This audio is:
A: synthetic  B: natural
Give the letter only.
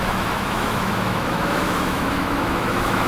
A